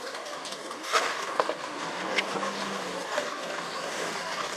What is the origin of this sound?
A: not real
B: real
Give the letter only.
A